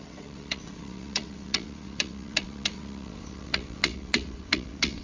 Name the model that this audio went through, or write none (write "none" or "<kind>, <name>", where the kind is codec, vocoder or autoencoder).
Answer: vocoder, WaveNeXt